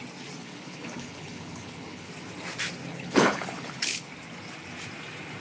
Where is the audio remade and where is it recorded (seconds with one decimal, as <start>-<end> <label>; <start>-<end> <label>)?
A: 0.0-0.4 recorded; 0.4-2.1 remade; 2.1-2.9 recorded; 2.9-4.1 remade; 4.1-5.4 recorded